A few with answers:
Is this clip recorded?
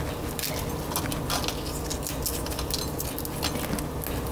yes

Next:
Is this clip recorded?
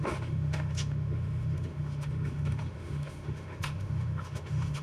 no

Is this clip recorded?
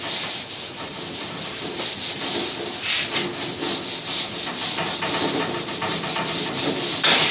yes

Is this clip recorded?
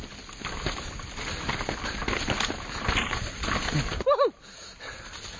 yes